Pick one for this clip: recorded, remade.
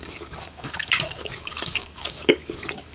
remade